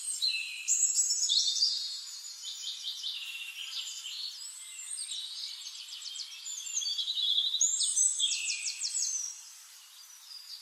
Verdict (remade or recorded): remade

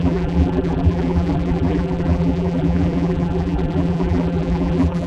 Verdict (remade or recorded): remade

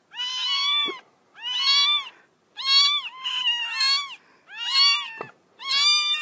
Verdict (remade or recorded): recorded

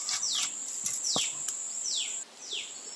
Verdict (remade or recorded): recorded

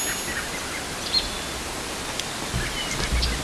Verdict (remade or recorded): recorded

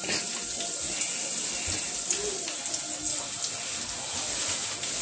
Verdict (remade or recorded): recorded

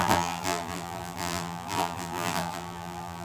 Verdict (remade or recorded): remade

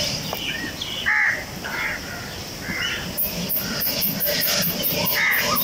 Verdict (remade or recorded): recorded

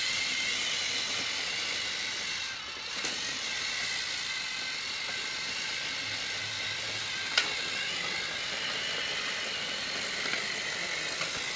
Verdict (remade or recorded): recorded